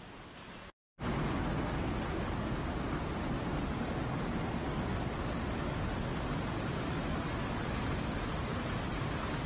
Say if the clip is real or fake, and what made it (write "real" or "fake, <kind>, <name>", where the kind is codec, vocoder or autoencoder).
real